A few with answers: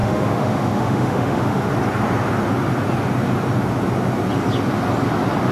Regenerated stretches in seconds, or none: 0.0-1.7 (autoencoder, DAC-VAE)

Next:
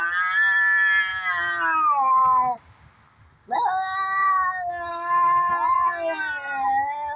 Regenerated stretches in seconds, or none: 4.9-5.5 (autoencoder, DAC-VAE)

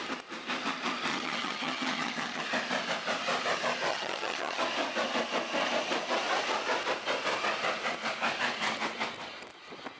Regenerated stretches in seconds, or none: 1.1-2.4 (vocoder, HiFi-GAN); 3.9-4.6

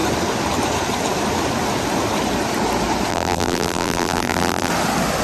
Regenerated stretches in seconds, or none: 3.1-4.7 (vocoder, BigVGAN v2)

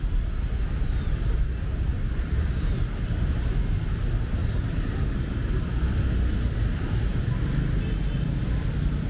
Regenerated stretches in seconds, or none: none

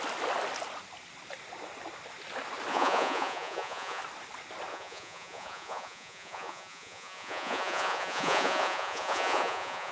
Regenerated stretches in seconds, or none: 2.7-4.0 (vocoder, Vocos); 4.7-9.9